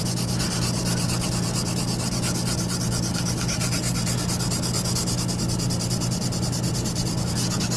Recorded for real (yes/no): yes